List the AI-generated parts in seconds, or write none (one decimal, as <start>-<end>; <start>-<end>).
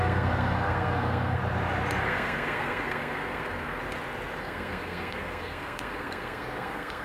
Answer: 0.0-1.4; 2.0-3.8; 4.4-7.0